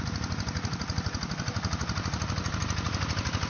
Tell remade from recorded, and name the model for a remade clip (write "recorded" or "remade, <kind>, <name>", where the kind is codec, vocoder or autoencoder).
recorded